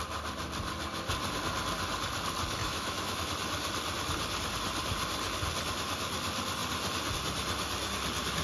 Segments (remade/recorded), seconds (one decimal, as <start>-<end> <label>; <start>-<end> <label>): 0.0-2.6 recorded; 2.6-3.3 remade; 3.3-8.4 recorded